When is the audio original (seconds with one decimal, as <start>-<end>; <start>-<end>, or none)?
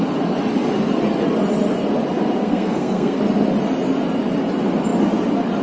0.0-2.4; 3.2-5.6